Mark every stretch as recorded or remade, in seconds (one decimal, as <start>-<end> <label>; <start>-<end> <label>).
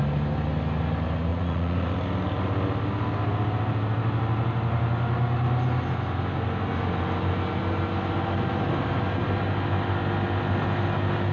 0.0-1.3 recorded; 1.3-1.9 remade; 1.9-11.3 recorded